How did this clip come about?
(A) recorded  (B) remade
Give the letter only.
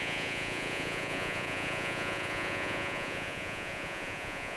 B